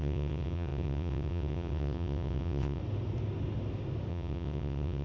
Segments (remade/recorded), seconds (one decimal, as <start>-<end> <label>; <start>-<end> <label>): 0.0-2.8 remade; 2.8-4.1 recorded; 4.1-5.0 remade